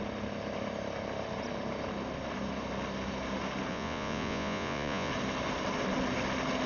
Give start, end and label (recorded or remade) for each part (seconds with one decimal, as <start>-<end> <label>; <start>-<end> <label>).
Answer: 0.0-3.7 recorded; 3.7-5.1 remade; 5.1-6.7 recorded